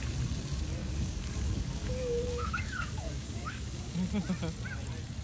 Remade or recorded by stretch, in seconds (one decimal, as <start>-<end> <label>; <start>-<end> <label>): 0.0-0.8 recorded; 0.8-3.9 remade; 3.9-5.2 recorded